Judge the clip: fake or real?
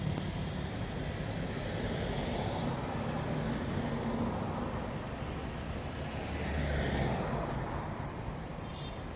real